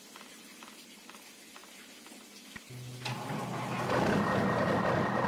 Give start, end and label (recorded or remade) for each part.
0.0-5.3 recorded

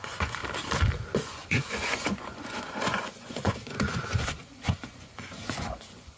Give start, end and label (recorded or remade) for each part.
0.0-0.4 remade; 0.4-1.1 recorded; 1.1-6.2 remade